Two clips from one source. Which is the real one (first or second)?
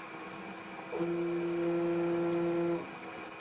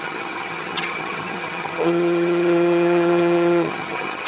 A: first